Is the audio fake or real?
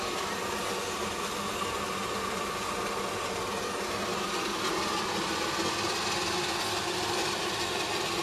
real